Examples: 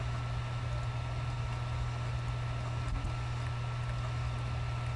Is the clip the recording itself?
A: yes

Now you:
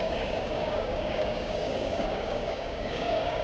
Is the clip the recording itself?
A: no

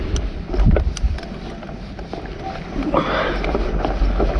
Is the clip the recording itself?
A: yes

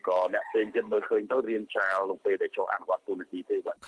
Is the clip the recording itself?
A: no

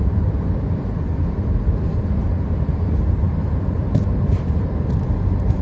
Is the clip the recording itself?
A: no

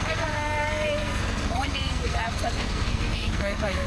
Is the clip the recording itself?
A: no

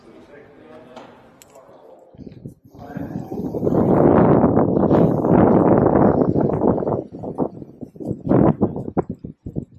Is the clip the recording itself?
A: yes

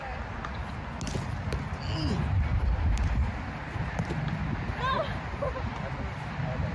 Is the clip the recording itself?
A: yes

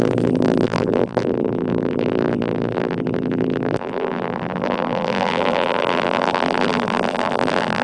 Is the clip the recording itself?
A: no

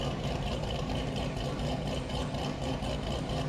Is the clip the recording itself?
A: no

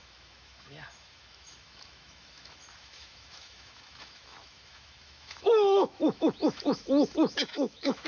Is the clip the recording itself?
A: no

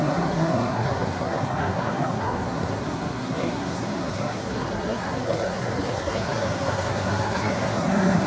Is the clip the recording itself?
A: no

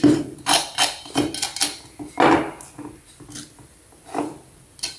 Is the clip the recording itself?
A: yes